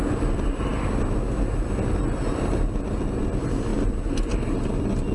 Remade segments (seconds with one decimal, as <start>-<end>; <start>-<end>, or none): none